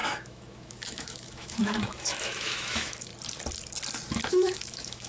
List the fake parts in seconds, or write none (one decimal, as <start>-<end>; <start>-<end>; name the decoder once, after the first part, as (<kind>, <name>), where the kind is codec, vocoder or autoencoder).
0.0-3.1 (autoencoder, DAC-VAE); 4.3-5.1